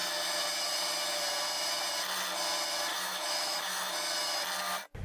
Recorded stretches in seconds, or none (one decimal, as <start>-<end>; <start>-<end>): 0.0-2.9; 3.9-5.0